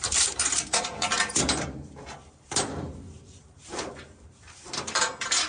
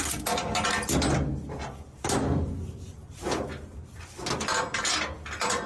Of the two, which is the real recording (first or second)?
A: second